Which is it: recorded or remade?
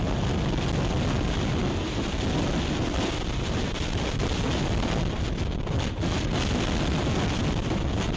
recorded